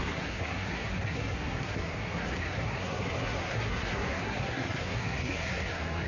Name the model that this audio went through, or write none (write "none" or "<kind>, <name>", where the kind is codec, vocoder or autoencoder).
codec, SNAC